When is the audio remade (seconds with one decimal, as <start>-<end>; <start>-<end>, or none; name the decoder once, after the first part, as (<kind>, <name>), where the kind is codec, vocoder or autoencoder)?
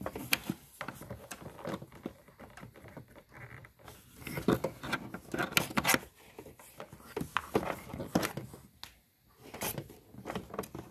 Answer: none